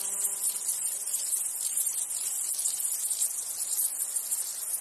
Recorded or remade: recorded